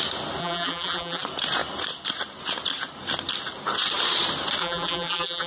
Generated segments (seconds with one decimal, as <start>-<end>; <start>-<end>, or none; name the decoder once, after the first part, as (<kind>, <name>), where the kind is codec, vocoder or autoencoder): 0.4-1.2 (vocoder, BigVGAN v2); 4.6-5.5